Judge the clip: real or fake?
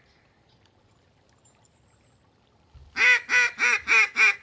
real